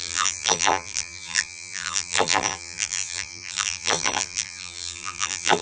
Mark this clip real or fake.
fake